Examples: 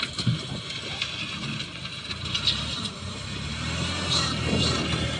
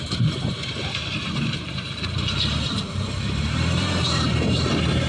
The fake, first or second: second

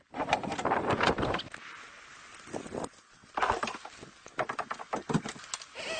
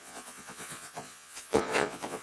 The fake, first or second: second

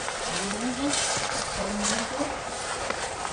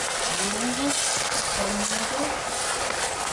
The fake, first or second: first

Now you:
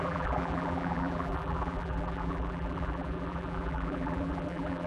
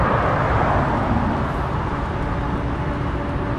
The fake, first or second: first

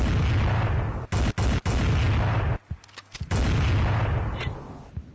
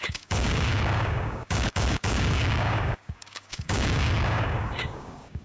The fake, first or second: second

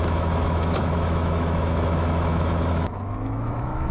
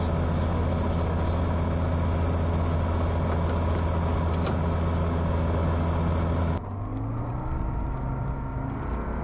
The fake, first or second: first